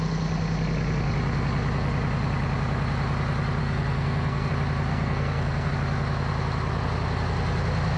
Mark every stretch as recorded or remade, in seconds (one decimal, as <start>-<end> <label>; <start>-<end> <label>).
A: 0.0-3.6 recorded; 3.6-4.5 remade; 4.5-4.9 recorded; 4.9-5.7 remade; 5.7-8.0 recorded